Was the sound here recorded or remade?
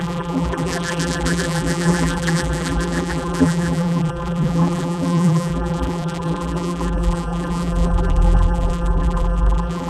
remade